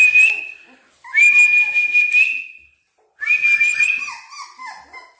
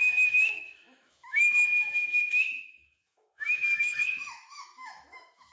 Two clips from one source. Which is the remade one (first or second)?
second